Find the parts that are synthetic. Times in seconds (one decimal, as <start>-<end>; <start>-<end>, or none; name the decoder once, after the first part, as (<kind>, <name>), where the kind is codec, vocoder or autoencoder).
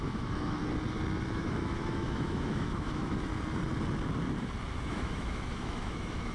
0.0-0.6 (autoencoder, DAC-VAE); 1.3-3.3; 4.8-6.3